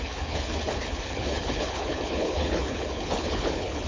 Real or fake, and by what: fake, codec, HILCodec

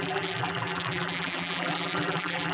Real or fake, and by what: fake, vocoder, BigVGAN v2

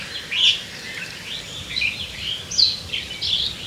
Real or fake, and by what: real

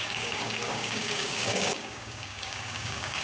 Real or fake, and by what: fake, codec, DAC